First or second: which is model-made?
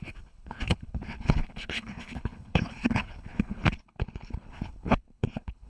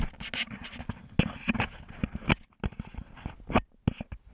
first